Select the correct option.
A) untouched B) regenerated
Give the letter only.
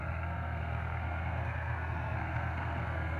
B